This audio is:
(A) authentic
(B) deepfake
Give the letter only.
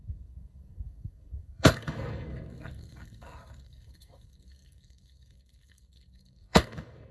B